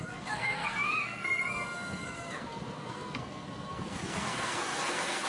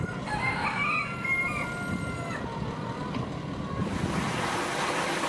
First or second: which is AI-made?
first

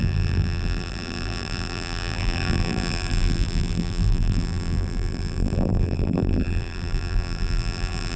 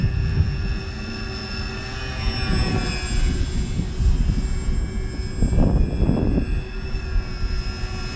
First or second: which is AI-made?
first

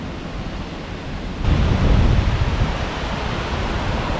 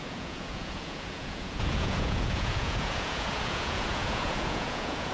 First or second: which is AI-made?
second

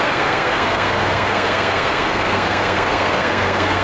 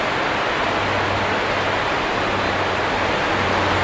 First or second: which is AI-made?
first